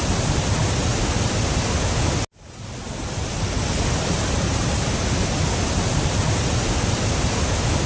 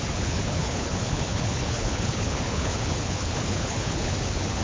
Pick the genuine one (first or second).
first